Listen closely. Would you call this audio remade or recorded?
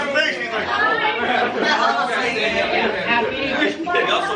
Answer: remade